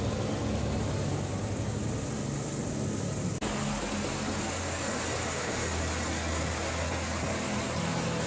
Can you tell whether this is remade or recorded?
recorded